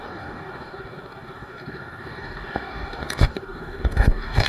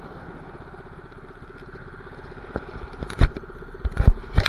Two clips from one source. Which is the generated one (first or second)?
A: first